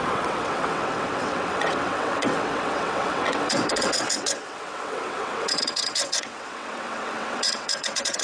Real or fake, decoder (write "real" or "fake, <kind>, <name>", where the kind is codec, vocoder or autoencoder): fake, vocoder, WaveNeXt